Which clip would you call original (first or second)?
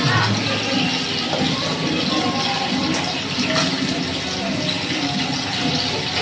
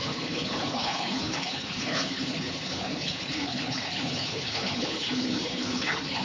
first